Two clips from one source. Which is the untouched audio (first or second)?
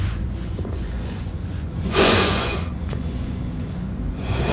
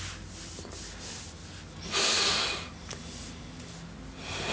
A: second